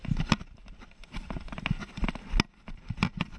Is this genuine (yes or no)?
yes